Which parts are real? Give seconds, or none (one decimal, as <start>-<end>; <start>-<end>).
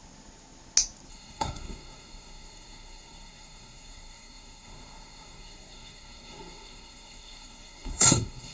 0.0-1.1